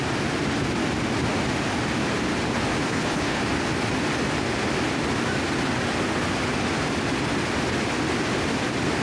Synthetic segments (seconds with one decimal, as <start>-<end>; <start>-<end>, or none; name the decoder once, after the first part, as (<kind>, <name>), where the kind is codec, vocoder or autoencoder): 2.9-3.4 (codec, HILCodec)